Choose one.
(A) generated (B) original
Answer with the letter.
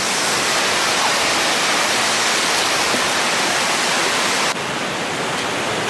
B